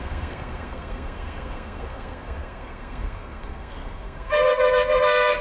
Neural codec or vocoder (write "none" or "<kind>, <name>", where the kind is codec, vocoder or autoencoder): codec, SNAC